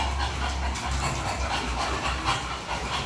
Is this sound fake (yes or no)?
no